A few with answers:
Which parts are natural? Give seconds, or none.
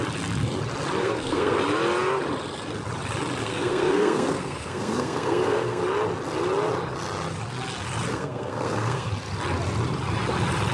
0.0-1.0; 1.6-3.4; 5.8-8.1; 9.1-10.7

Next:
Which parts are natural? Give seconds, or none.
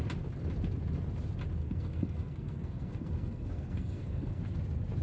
0.0-1.6; 4.4-5.0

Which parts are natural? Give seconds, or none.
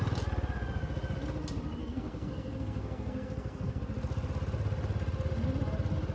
0.0-1.8; 3.8-6.1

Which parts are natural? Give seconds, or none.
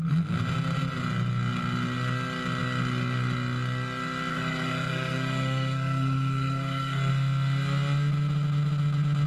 0.0-4.3; 7.1-9.3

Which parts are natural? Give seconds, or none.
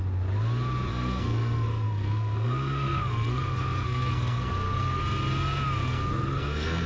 0.0-0.9; 5.0-5.8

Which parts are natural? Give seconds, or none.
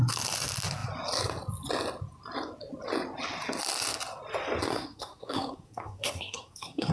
0.0-4.7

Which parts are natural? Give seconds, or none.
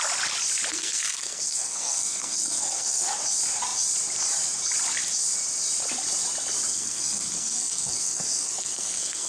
0.0-0.7; 3.2-6.7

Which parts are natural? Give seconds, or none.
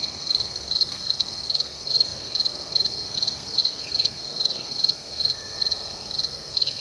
none